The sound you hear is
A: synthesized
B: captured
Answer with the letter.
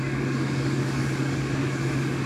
A